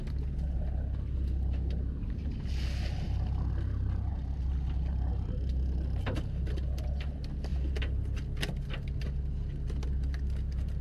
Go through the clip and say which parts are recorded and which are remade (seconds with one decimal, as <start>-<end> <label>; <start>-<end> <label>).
0.0-10.8 recorded